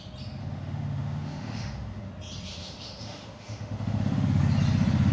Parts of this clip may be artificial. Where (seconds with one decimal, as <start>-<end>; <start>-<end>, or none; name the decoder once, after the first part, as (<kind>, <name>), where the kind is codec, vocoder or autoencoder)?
0.4-2.1 (autoencoder, DAC-VAE); 2.5-4.4